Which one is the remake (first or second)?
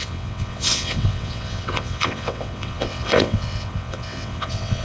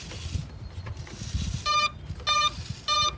first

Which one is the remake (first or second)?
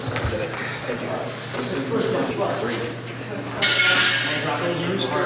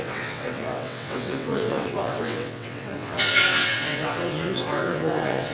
second